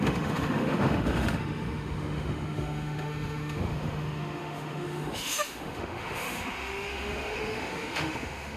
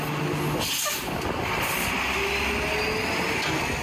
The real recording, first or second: second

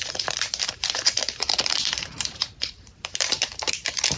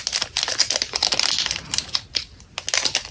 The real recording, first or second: second